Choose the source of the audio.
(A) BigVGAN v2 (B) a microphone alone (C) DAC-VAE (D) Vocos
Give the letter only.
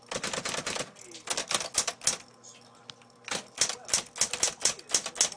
B